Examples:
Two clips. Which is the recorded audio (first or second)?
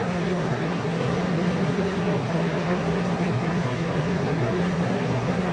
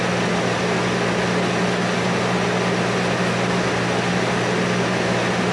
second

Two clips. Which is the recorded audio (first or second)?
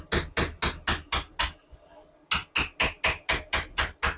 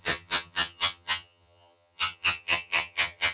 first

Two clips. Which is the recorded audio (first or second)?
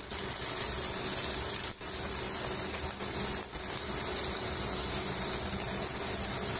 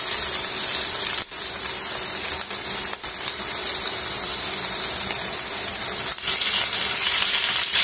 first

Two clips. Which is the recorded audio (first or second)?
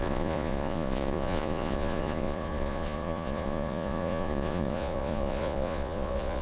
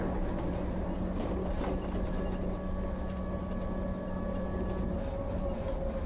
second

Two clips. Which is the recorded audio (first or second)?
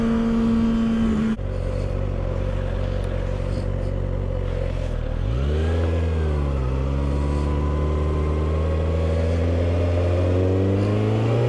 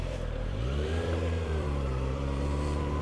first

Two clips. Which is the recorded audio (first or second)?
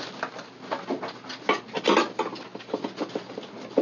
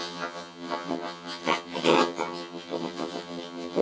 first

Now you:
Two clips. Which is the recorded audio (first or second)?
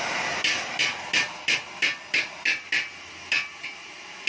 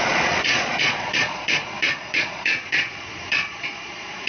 first